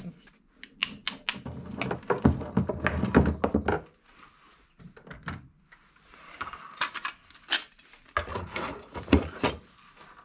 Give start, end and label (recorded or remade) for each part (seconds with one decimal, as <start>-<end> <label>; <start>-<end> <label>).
0.0-8.3 recorded; 8.3-9.5 remade; 9.5-10.2 recorded